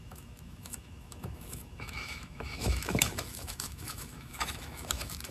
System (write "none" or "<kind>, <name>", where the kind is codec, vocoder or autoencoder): autoencoder, DAC-VAE